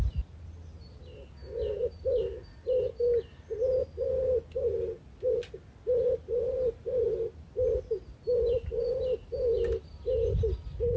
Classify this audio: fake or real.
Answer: real